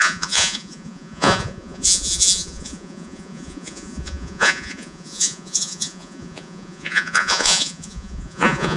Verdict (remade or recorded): remade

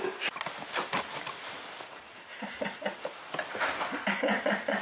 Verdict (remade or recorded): recorded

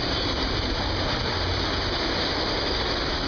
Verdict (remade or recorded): recorded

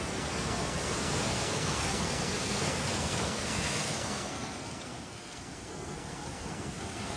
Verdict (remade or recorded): remade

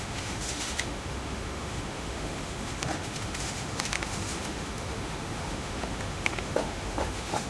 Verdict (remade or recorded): remade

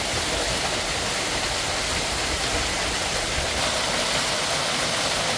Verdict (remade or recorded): recorded